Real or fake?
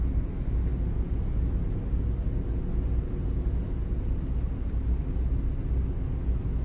real